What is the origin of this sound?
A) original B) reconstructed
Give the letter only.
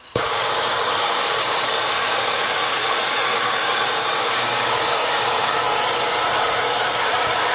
B